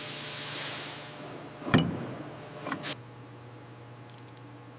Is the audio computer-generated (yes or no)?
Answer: no